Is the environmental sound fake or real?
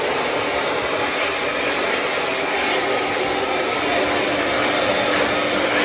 real